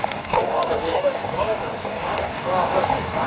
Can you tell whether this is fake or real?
fake